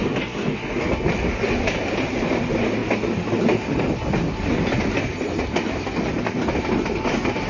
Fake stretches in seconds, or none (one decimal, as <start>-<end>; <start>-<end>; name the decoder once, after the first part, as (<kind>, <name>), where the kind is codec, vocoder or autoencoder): none